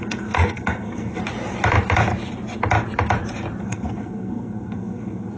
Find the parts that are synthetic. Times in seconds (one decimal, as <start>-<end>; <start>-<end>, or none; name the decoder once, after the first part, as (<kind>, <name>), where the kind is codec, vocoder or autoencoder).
0.0-1.2 (codec, SNAC); 3.6-5.4